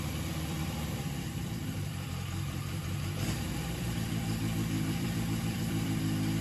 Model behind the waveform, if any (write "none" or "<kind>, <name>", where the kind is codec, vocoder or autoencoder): vocoder, BigVGAN v2